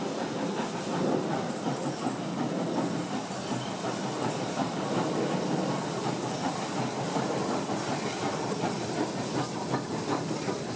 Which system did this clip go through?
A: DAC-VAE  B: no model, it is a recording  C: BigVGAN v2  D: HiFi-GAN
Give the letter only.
C